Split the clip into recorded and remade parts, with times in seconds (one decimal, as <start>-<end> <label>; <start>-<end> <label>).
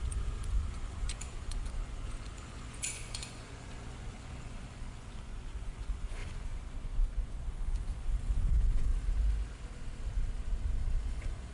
0.0-8.9 remade; 8.9-11.0 recorded; 11.0-11.5 remade